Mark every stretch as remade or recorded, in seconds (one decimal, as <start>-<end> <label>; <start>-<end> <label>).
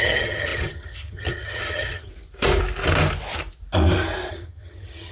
0.0-2.1 remade; 2.1-4.3 recorded; 4.3-5.1 remade